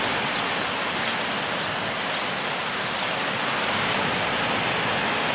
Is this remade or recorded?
recorded